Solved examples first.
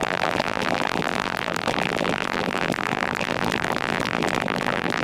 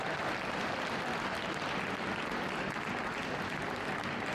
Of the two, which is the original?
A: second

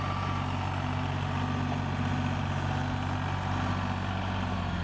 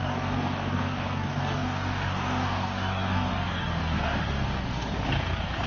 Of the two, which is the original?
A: first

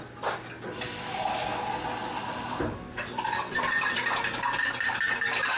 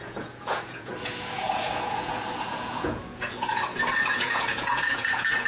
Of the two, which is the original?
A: first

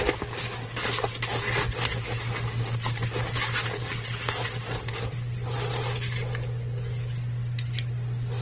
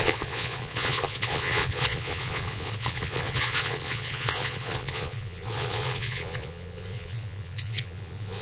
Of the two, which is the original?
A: first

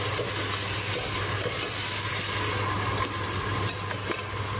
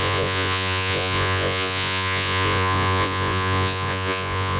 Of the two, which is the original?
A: first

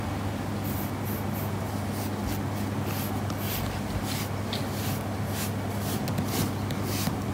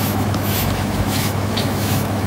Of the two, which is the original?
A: first